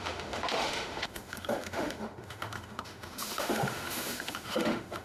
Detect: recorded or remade remade